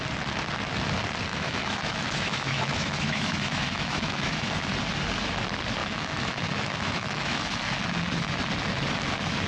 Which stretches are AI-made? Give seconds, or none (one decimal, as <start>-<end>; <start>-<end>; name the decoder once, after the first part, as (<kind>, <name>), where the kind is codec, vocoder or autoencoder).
1.3-4.5 (autoencoder, DAC-VAE); 5.8-7.4